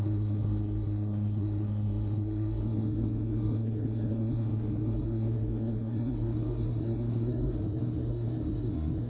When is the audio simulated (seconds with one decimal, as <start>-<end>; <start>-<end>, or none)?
0.0-9.1